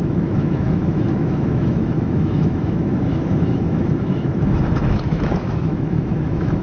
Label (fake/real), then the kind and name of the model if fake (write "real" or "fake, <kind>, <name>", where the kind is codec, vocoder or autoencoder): fake, autoencoder, DAC-VAE